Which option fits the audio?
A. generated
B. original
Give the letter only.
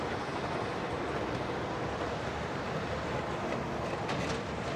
B